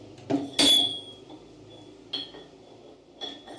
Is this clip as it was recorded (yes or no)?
yes